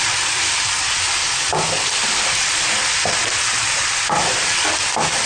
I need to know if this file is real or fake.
real